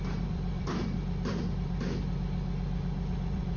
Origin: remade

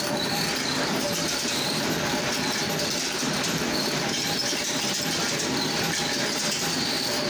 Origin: remade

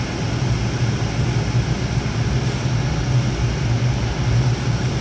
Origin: recorded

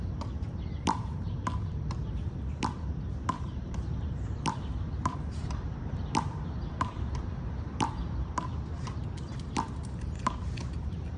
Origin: remade